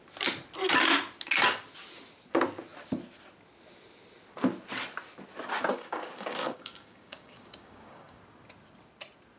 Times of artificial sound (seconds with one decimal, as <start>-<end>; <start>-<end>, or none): 5.7-8.2